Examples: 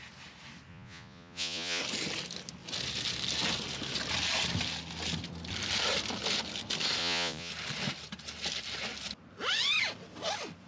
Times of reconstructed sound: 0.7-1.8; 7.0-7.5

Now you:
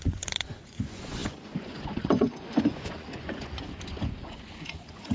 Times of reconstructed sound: 0.0-5.1

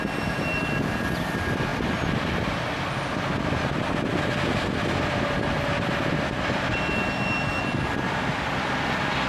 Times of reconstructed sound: none

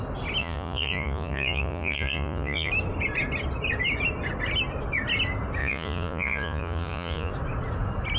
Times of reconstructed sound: 0.4-2.7; 5.6-7.3

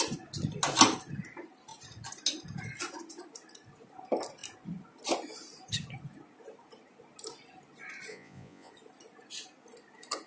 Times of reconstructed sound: 8.1-8.7